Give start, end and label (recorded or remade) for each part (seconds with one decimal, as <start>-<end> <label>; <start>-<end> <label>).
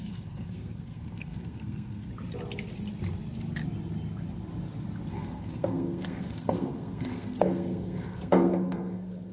0.0-2.1 remade; 2.1-5.1 recorded; 5.1-9.3 remade